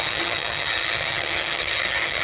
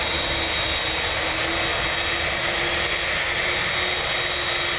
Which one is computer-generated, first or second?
first